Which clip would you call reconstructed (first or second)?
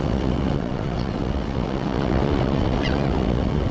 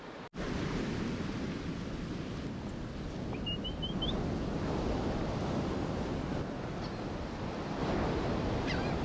first